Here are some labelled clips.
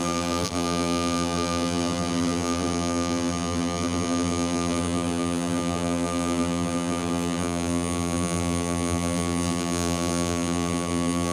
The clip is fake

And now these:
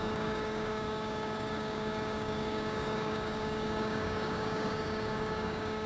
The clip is fake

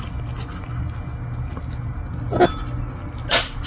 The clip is real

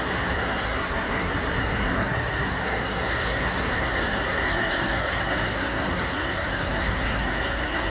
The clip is fake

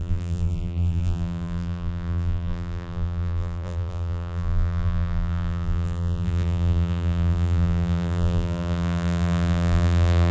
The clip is fake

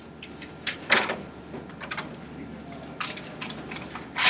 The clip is real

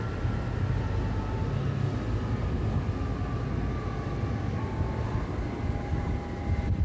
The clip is real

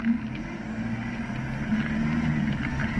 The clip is real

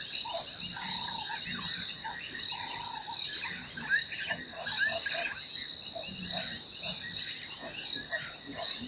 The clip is real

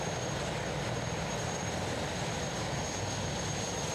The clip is real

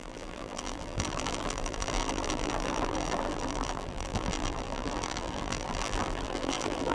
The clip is fake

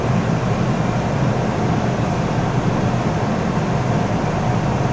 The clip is fake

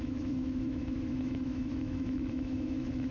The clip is fake